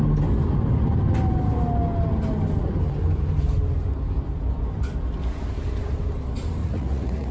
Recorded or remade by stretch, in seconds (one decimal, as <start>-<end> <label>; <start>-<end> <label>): 0.0-6.6 recorded; 6.6-7.3 remade